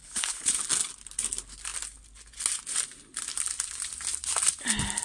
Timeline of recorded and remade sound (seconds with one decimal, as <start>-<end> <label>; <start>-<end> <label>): 0.0-0.6 remade; 0.6-5.0 recorded